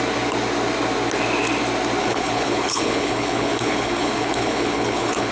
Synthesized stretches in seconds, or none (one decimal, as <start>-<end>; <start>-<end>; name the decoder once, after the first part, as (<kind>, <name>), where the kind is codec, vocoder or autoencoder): 2.0-5.3 (codec, HILCodec)